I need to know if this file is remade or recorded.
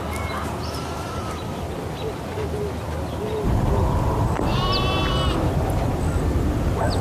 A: recorded